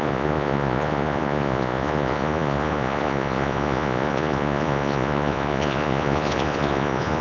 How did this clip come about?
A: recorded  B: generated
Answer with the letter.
B